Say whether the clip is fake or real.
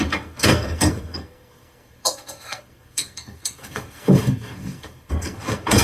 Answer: fake